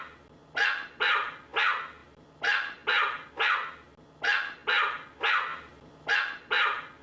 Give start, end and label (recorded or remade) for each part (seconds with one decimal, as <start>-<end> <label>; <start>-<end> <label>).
0.0-2.0 recorded; 2.0-3.3 remade; 3.3-5.5 recorded; 5.5-6.1 remade; 6.1-7.0 recorded